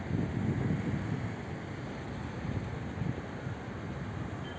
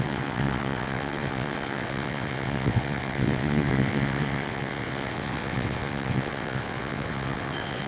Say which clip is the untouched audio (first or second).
first